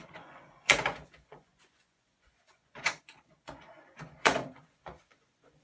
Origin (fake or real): fake